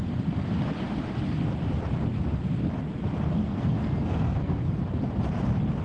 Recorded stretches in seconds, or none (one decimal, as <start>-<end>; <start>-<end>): 0.0-3.4; 4.8-5.8